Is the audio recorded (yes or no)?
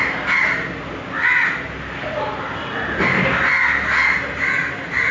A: yes